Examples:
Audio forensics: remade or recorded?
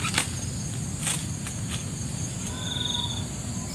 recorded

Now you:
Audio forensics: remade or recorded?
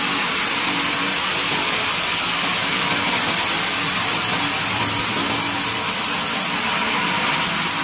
recorded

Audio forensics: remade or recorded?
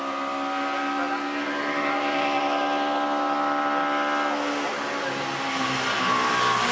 recorded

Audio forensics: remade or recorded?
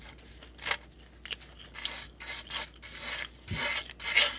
recorded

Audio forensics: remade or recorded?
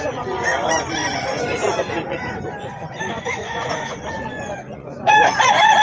remade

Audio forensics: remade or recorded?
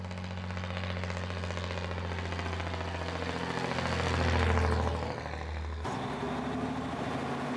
recorded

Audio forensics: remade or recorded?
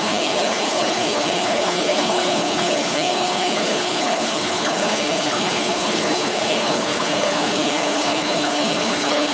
remade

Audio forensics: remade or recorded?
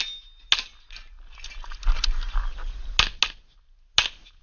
recorded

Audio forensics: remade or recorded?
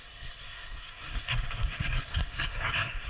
remade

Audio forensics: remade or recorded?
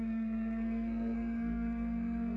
remade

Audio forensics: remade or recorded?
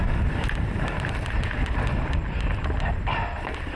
recorded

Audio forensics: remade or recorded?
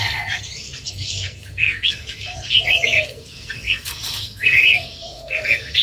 remade